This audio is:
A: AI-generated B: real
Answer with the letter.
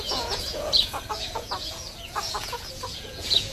A